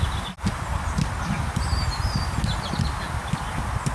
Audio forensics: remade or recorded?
recorded